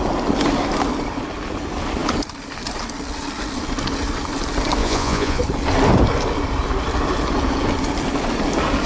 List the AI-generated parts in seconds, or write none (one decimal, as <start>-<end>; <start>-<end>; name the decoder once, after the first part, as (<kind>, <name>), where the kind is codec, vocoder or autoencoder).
4.8-5.4 (vocoder, Vocos)